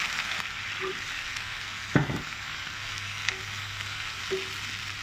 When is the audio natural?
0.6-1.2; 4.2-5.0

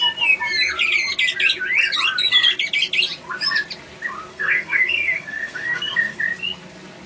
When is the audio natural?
0.0-4.3; 6.2-7.1

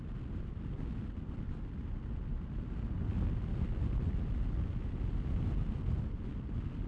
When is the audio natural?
0.0-6.9

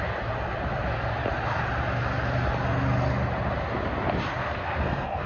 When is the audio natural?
0.0-4.4

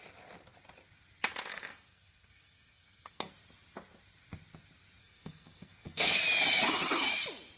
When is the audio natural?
0.0-1.5; 3.3-5.0; 6.2-7.6

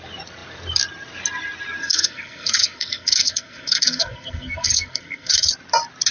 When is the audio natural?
0.0-1.8; 5.5-6.1